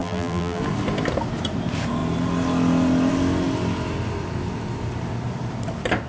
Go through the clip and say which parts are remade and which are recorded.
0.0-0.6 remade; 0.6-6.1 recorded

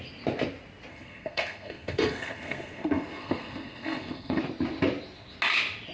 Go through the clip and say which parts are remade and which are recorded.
0.0-0.9 recorded; 0.9-4.4 remade; 4.4-5.9 recorded